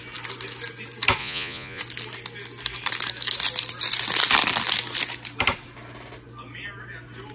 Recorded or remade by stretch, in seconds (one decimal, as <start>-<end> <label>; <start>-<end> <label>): 0.0-1.2 recorded; 1.2-1.8 remade; 1.8-7.3 recorded